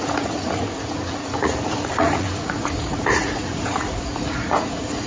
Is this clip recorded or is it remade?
remade